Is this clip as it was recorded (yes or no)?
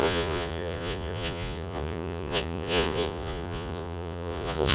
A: no